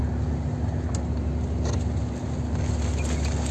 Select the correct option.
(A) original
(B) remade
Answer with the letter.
A